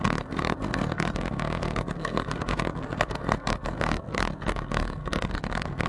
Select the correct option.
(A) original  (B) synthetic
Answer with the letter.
B